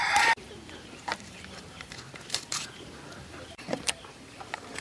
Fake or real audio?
fake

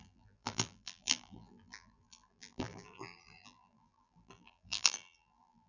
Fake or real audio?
fake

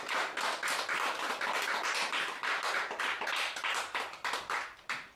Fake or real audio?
fake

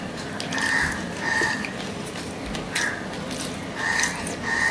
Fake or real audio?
real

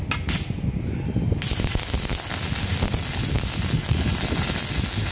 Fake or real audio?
real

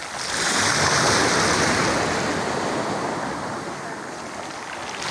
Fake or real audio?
real